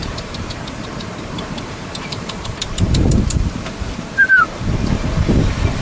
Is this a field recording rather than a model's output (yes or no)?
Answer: no